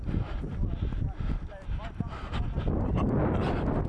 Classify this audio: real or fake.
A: real